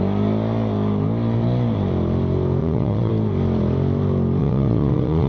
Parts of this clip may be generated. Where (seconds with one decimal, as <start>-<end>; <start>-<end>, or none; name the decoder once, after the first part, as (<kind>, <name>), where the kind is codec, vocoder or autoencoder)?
2.6-3.1 (vocoder, WaveNeXt); 4.4-5.3

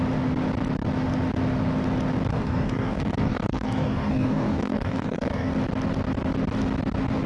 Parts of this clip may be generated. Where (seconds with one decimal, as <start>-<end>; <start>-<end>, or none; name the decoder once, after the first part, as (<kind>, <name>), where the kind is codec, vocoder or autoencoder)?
2.3-5.5 (codec, DAC)

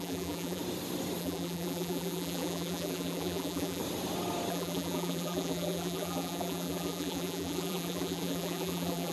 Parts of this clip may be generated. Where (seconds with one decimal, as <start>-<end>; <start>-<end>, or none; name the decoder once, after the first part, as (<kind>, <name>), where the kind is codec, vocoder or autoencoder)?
0.0-0.6 (vocoder, BigVGAN v2); 1.2-3.8; 4.5-9.1

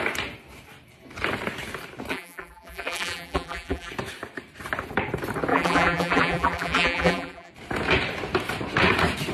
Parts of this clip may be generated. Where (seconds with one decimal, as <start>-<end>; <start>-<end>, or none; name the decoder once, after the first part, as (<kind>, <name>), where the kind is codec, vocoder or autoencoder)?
2.1-3.9 (vocoder, BigVGAN v2); 5.5-7.5

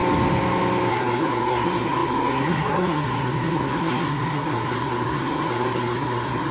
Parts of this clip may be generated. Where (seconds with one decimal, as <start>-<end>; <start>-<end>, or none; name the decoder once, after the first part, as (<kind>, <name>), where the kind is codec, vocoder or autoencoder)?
0.9-6.5 (codec, SNAC)

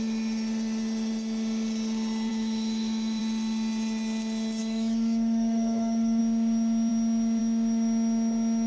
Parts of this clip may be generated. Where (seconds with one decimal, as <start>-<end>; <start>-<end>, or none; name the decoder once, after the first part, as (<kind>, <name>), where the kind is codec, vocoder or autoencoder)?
2.3-3.2 (autoencoder, DAC-VAE); 4.6-6.2